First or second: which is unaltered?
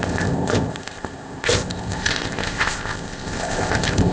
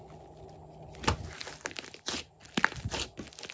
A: second